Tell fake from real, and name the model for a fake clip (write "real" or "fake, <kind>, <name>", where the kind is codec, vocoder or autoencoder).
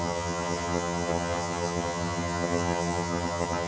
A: fake, vocoder, HiFi-GAN